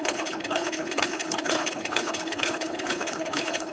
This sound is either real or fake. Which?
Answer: fake